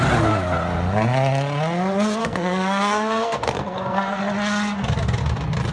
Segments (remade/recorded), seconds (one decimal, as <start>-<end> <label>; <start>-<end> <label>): 0.0-2.2 recorded; 2.2-4.2 remade; 4.2-5.7 recorded